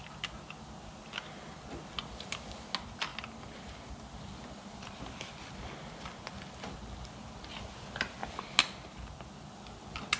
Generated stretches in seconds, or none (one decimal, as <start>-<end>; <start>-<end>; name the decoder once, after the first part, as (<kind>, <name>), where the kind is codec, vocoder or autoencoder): none